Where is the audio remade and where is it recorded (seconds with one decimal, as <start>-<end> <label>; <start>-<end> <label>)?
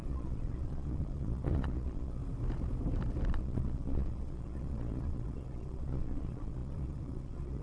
0.0-2.2 remade; 2.2-3.3 recorded; 3.3-7.6 remade